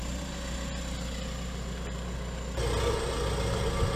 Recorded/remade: recorded